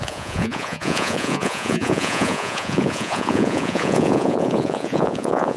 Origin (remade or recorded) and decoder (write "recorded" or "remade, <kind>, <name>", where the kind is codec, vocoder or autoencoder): remade, vocoder, Vocos